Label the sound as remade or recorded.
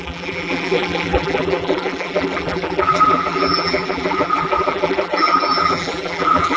remade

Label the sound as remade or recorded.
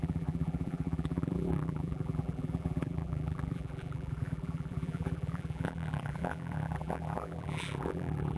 remade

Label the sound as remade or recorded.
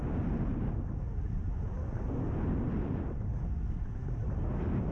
recorded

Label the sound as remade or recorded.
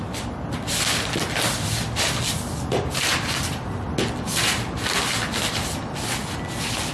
recorded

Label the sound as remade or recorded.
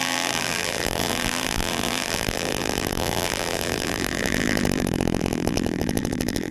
remade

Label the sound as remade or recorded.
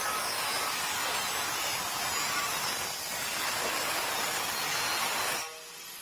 recorded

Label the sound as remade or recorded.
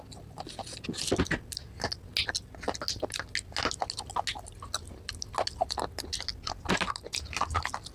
recorded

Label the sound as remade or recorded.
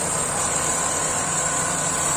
remade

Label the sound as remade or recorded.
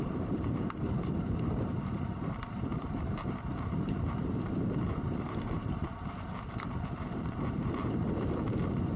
remade